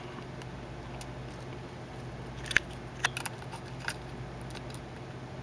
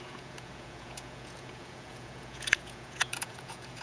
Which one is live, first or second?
first